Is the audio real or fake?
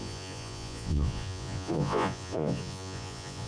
fake